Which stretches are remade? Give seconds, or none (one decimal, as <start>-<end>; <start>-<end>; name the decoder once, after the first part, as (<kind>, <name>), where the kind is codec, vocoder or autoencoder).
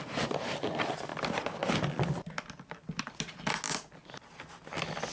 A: none